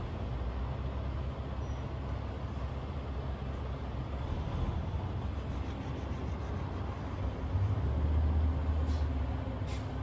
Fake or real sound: real